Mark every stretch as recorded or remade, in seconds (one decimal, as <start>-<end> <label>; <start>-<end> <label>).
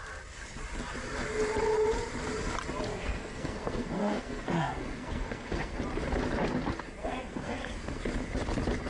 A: 0.0-2.9 recorded; 2.9-5.8 remade; 5.8-7.0 recorded; 7.0-8.0 remade; 8.0-8.9 recorded